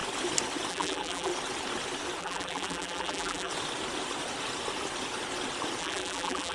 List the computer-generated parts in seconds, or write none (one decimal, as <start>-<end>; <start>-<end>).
0.7-1.3; 2.2-3.5; 5.8-6.5